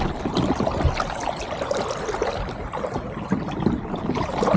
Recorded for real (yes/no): yes